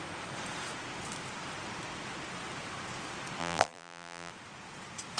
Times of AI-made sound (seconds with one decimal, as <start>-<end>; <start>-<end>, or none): 3.4-4.3